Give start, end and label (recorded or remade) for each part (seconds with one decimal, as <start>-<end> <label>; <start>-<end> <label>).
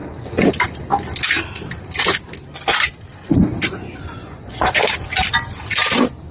0.0-0.5 remade; 0.5-3.2 recorded; 3.2-4.8 remade; 4.8-6.3 recorded